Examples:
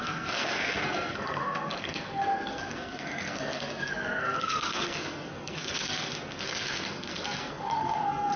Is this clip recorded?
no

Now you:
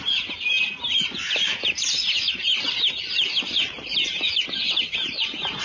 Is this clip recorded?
yes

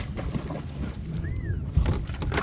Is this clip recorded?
yes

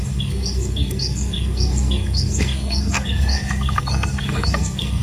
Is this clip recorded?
no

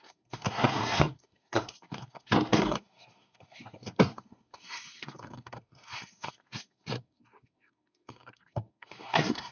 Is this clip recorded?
no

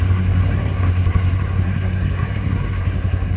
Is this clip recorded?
no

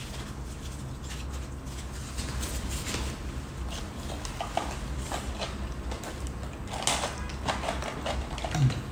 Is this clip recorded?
yes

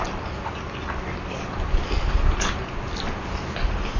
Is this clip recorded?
yes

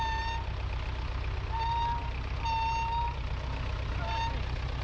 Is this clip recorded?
yes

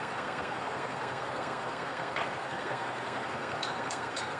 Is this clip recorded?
no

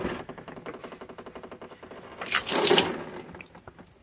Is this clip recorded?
yes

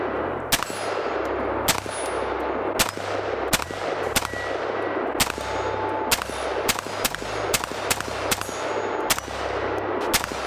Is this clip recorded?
yes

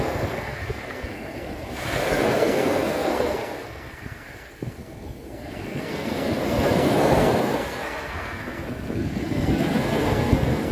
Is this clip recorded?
no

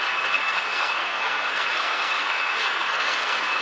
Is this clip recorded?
no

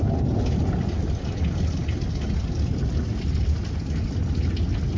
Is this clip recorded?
yes